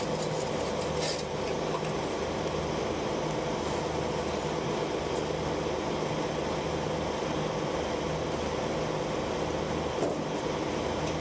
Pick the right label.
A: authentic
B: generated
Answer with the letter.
A